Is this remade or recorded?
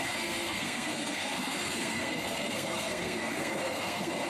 remade